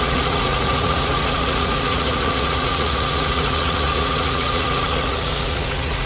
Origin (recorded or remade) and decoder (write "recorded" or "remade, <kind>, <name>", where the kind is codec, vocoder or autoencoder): remade, vocoder, Vocos